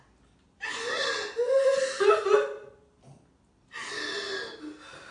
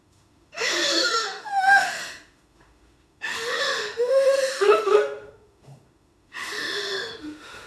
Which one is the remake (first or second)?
second